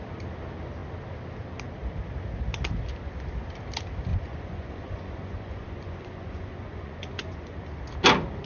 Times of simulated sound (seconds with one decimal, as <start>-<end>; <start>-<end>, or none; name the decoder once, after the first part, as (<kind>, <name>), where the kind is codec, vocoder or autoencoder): 4.1-7.6 (vocoder, Vocos)